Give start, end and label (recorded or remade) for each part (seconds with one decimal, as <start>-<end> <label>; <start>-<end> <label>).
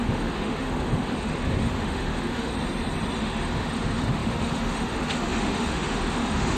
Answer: 0.0-2.5 remade; 2.5-3.2 recorded; 3.2-6.6 remade